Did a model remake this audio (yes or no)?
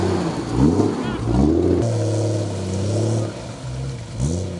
no